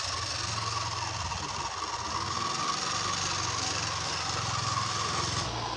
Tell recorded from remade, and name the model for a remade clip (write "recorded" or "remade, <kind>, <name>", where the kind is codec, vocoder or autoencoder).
recorded